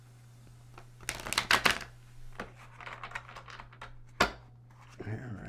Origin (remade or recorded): recorded